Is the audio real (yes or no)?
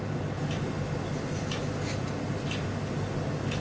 yes